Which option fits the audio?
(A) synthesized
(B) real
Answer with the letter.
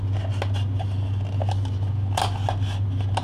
B